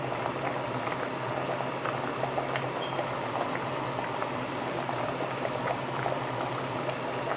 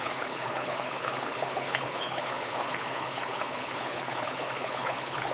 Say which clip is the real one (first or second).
first